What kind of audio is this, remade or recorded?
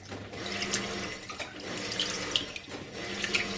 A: recorded